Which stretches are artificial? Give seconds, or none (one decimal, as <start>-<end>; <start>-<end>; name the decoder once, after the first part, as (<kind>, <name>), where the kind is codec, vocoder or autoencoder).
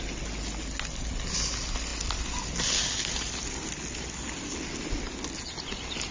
none